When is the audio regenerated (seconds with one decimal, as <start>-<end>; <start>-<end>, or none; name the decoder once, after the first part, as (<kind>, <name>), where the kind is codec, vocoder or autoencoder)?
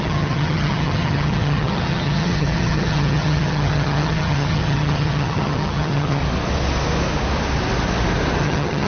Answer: 0.0-6.2 (vocoder, HiFi-GAN); 8.4-8.9